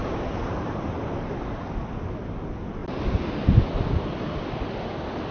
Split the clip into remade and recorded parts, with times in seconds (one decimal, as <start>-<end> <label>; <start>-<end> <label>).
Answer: 0.0-0.6 remade; 0.6-5.3 recorded